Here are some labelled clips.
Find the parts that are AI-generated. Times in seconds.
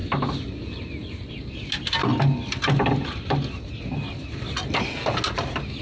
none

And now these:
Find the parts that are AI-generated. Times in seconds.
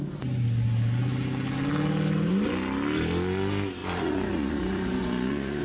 3.8-5.6 (vocoder, Vocos)